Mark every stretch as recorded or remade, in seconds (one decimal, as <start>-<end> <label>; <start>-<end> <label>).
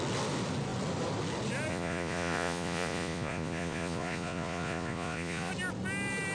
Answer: 0.0-1.7 recorded; 1.7-5.5 remade; 5.5-6.3 recorded